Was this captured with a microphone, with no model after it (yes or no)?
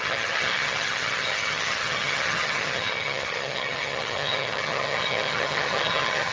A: no